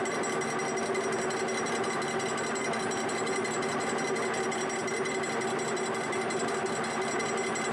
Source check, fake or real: real